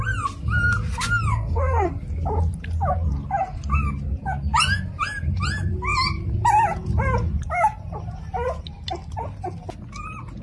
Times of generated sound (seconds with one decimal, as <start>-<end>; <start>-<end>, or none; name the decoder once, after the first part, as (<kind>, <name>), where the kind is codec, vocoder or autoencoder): 1.3-1.9 (codec, SNAC)